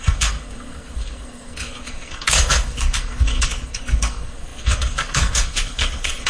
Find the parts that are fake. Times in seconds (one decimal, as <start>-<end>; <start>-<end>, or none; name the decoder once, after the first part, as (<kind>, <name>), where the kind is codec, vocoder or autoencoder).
0.0-6.3 (codec, SNAC)